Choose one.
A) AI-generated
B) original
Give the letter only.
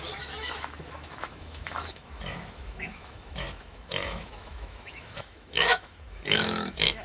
A